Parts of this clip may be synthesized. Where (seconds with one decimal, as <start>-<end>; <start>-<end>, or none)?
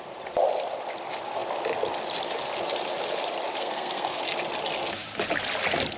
3.6-4.2